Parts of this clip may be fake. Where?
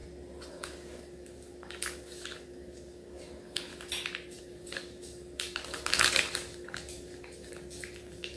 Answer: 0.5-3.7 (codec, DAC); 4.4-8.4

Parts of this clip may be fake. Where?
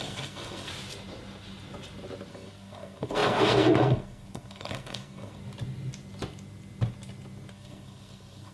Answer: 0.0-0.7 (codec, SNAC); 2.3-5.4; 7.5-8.5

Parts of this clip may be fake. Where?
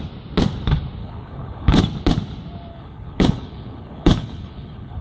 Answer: 1.0-1.8 (codec, HILCodec); 2.7-5.0